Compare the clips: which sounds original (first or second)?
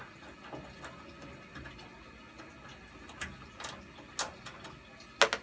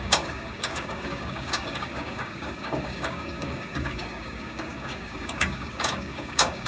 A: first